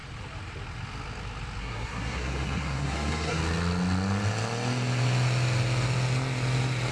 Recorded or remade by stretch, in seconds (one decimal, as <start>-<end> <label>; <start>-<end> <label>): 0.0-1.6 recorded; 1.6-3.4 remade; 3.4-6.9 recorded